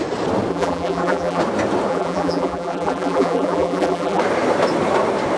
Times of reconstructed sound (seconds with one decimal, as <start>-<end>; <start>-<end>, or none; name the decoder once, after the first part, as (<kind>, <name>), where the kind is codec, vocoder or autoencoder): 0.5-1.4 (vocoder, BigVGAN v2); 1.9-4.2